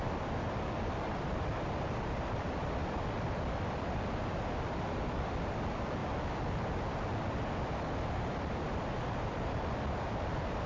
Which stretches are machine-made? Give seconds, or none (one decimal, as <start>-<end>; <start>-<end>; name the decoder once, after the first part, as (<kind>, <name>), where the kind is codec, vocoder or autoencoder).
0.0-6.0 (vocoder, BigVGAN v2); 8.2-10.7